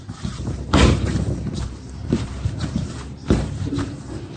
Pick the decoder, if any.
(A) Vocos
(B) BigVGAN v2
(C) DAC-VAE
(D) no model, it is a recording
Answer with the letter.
B